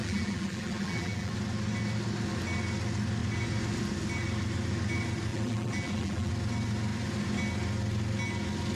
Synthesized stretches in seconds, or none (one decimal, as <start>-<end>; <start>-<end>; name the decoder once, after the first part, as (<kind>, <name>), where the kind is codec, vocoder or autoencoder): 0.0-1.3 (vocoder, BigVGAN v2); 5.3-6.3